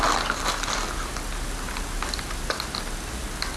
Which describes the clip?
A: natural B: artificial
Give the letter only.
A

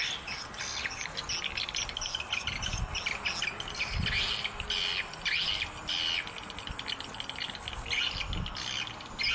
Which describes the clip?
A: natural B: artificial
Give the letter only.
A